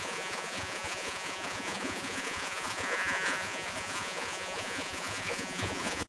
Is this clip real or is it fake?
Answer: fake